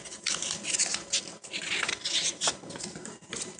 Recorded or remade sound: recorded